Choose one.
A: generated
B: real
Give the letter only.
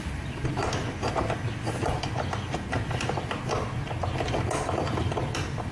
B